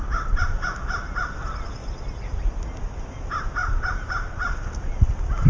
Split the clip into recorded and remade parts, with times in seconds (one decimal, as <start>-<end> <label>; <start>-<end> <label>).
0.0-3.6 recorded; 3.6-4.5 remade; 4.5-5.5 recorded